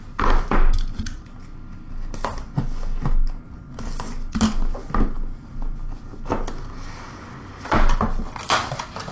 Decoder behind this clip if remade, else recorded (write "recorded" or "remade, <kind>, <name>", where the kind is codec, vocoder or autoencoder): recorded